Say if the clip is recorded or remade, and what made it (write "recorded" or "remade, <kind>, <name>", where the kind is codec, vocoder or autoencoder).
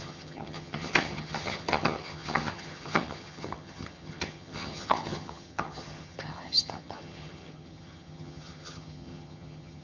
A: remade, vocoder, HiFi-GAN